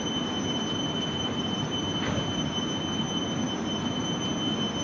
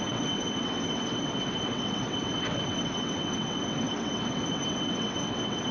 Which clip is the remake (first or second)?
second